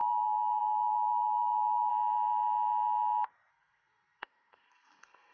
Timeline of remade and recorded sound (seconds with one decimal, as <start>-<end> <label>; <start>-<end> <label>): 0.0-1.9 remade; 1.9-3.5 recorded; 3.5-5.3 remade